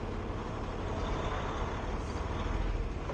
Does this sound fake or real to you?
real